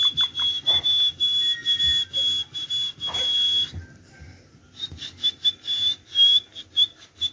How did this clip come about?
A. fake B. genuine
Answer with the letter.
B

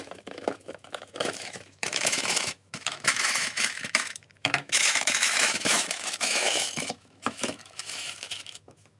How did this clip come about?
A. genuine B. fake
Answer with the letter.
B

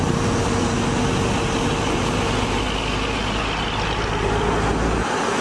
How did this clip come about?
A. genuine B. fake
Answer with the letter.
A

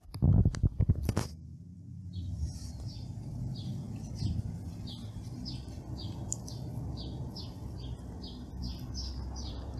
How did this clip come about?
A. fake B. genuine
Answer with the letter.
B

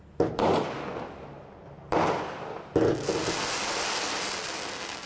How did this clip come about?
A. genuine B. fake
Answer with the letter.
A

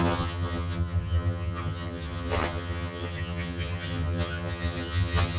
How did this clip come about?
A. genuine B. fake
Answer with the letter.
B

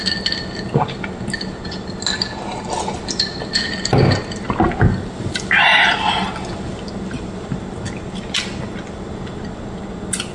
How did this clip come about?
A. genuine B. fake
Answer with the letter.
A